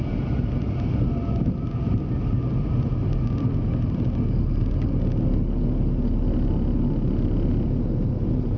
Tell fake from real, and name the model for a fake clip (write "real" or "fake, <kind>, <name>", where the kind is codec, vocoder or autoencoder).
real